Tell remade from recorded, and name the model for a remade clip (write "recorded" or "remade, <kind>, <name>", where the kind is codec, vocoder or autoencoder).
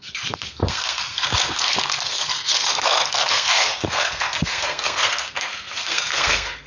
remade, codec, SNAC